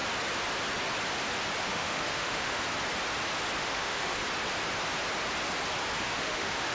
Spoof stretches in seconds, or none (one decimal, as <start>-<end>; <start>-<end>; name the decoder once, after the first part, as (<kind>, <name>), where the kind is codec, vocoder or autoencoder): 1.6-2.6 (autoencoder, DAC-VAE); 3.6-4.2; 6.0-6.7